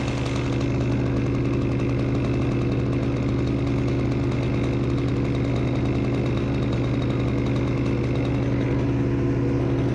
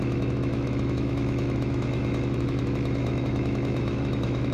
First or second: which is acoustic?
first